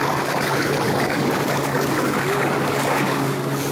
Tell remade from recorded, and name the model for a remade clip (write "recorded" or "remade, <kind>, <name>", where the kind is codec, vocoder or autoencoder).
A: remade, codec, DAC